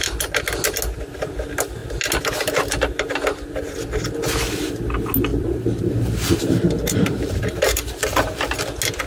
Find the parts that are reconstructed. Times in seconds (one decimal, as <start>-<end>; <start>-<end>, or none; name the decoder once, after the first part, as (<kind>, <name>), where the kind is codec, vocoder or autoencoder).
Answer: 5.3-8.6 (vocoder, BigVGAN v2)